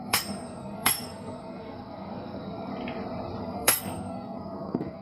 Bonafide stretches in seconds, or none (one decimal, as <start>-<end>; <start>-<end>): 2.7-3.4